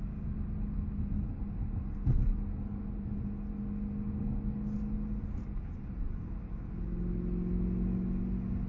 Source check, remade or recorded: recorded